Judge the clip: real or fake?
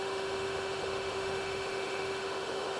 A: fake